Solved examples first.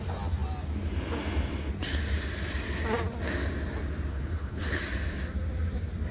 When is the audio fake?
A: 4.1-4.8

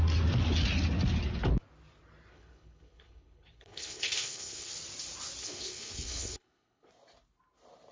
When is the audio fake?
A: 2.3-4.7; 5.4-6.9

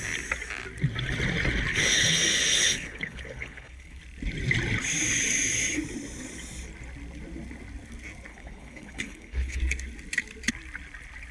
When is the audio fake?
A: 1.7-4.0; 8.3-9.6

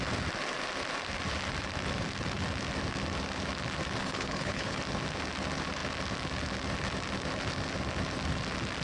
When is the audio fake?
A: 4.0-4.8

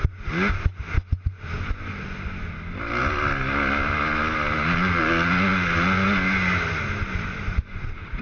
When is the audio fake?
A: none

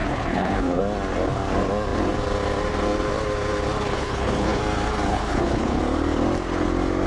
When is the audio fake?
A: 0.0-0.8; 3.9-4.6; 5.1-5.8

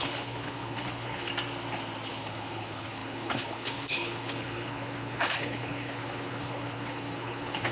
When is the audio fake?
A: 0.0-1.3; 2.1-7.7

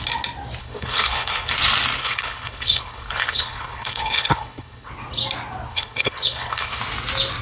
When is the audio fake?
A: 0.6-1.5; 2.0-4.9; 5.7-6.8